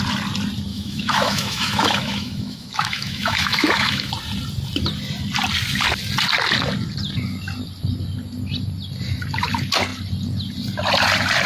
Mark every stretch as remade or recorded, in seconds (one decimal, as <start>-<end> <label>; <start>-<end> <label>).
0.0-0.7 recorded; 0.7-4.1 remade; 4.1-11.5 recorded

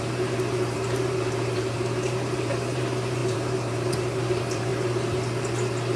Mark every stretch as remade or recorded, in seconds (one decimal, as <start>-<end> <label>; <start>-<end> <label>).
0.0-4.7 remade; 4.7-6.0 recorded

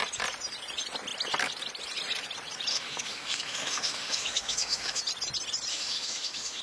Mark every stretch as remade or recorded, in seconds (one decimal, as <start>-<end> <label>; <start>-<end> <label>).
0.0-2.7 recorded; 2.7-5.0 remade; 5.0-5.7 recorded; 5.7-6.6 remade

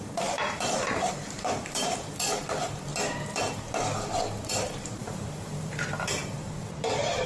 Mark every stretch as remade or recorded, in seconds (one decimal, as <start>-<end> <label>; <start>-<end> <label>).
0.0-2.9 remade; 2.9-4.5 recorded; 4.5-7.3 remade

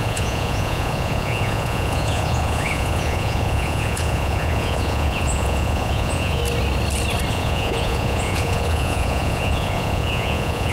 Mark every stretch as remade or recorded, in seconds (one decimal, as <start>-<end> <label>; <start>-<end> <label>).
0.0-6.4 remade; 6.4-7.3 recorded; 7.3-10.7 remade

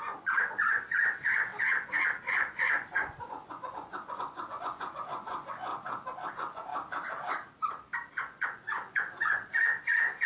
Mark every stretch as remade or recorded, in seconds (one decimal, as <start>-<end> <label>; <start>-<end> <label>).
0.0-1.5 remade; 1.5-2.3 recorded; 2.3-5.7 remade; 5.7-6.3 recorded; 6.3-6.7 remade; 6.7-8.1 recorded; 8.1-10.3 remade

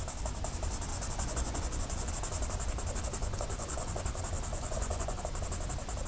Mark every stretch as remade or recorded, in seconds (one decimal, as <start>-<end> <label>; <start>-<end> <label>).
0.0-0.9 recorded; 0.9-2.1 remade; 2.1-3.2 recorded; 3.2-4.0 remade; 4.0-4.5 recorded; 4.5-5.2 remade; 5.2-6.1 recorded

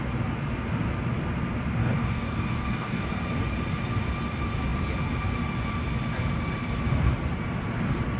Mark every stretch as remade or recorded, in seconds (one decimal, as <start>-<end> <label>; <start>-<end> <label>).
0.0-1.8 recorded; 1.8-3.1 remade; 3.1-8.2 recorded